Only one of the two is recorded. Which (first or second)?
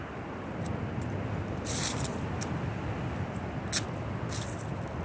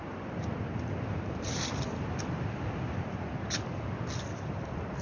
first